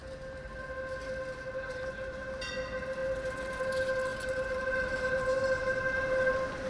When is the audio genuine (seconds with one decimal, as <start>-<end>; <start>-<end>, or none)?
0.0-6.7